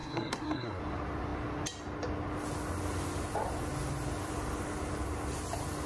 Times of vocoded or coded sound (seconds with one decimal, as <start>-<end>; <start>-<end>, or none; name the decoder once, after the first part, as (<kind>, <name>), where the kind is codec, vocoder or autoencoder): 0.0-0.8 (codec, SNAC)